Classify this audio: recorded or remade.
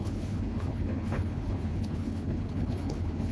remade